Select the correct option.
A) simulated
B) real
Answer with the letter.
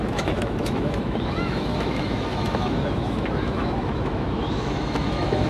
A